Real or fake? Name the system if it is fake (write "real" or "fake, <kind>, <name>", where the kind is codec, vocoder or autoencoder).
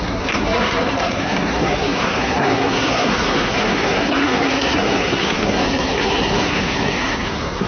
fake, codec, SNAC